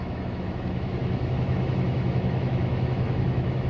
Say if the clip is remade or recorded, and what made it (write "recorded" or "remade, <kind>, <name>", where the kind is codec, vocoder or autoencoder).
remade, autoencoder, DAC-VAE